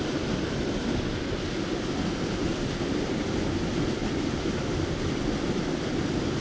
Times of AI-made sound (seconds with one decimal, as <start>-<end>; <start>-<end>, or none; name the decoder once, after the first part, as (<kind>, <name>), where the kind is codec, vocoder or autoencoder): none